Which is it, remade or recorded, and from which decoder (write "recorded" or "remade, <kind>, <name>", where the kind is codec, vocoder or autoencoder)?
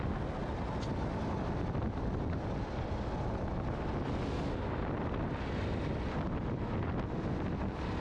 recorded